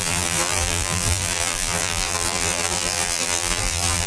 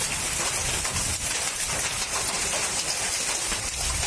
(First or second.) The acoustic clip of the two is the second